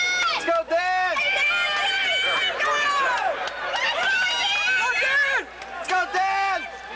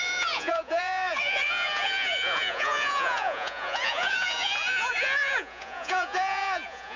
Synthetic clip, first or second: second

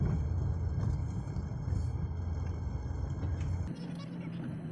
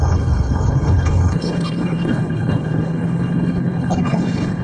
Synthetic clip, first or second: second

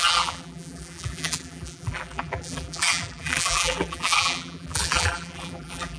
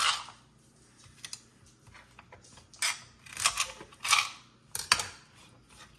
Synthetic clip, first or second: first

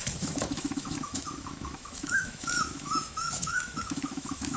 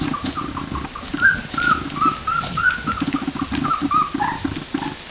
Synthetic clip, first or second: first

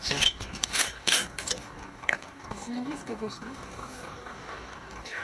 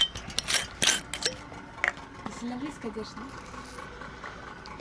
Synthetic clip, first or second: first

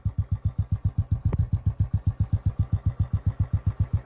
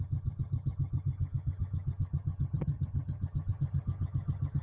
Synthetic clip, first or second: second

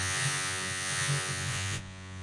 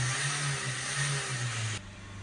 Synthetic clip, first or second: first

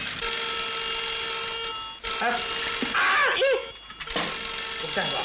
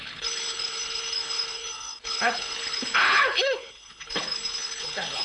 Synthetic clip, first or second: second